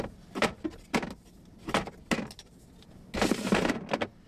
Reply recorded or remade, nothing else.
recorded